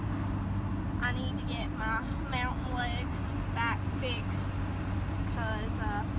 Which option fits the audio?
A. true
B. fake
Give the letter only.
A